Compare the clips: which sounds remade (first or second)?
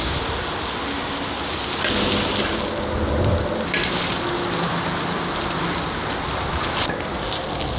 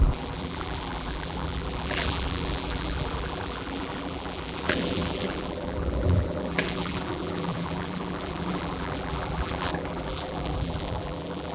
second